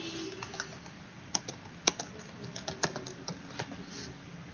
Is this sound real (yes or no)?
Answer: yes